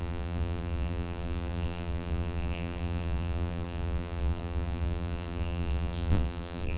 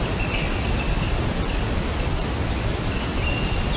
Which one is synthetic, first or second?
first